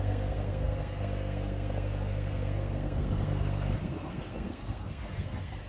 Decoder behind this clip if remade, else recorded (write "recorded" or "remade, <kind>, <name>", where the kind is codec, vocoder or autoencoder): remade, codec, SNAC